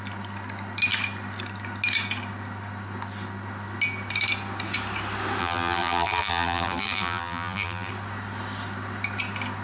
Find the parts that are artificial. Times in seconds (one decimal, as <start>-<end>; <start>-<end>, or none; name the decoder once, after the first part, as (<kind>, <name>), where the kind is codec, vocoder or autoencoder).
5.4-7.9 (vocoder, BigVGAN v2)

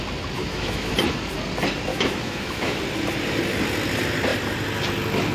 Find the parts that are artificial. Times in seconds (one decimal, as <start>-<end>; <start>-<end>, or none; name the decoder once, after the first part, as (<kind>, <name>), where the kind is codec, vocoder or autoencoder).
0.4-0.9 (autoencoder, DAC-VAE); 1.9-2.8